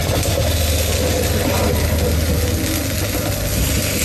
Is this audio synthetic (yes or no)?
no